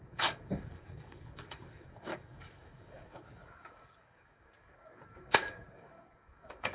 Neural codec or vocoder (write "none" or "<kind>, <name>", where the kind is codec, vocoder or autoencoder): codec, DAC